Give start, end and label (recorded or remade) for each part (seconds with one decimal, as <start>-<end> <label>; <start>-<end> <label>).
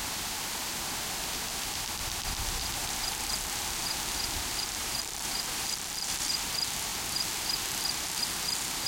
0.0-4.8 recorded; 4.8-6.5 remade; 6.5-8.9 recorded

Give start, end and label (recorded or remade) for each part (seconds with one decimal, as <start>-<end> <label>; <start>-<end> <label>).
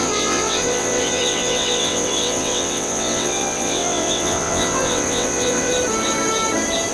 0.0-5.7 remade; 5.7-6.9 recorded